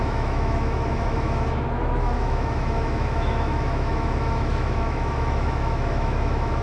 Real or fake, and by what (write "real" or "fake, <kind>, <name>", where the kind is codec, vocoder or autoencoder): fake, autoencoder, DAC-VAE